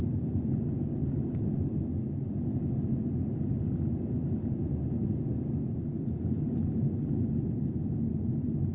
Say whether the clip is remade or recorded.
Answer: recorded